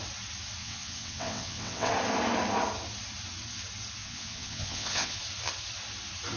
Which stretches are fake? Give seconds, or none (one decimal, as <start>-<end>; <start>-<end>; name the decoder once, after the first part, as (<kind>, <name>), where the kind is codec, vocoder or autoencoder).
0.6-1.9 (vocoder, WaveNeXt); 4.0-5.2